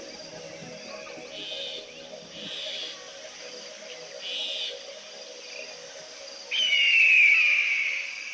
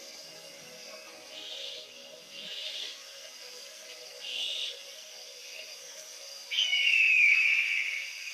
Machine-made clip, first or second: second